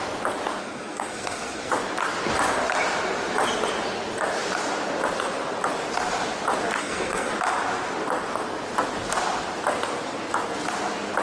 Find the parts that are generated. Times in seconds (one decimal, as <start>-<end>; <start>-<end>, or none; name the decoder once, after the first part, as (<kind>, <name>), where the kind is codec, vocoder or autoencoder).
0.6-1.7 (codec, SNAC); 6.8-7.3